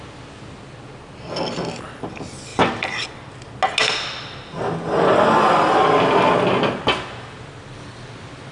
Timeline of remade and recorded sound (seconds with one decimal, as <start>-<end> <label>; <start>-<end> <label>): 0.0-8.5 recorded